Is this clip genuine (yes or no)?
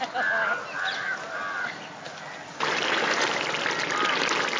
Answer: yes